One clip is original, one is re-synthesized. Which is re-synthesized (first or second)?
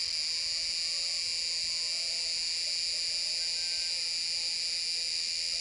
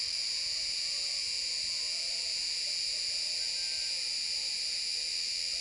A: second